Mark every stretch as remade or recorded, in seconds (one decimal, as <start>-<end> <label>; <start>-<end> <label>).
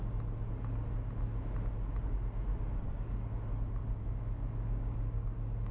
0.0-2.5 recorded; 2.5-3.2 remade; 3.2-3.8 recorded; 3.8-5.7 remade